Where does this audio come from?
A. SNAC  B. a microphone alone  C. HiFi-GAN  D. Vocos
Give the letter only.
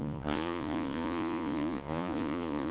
D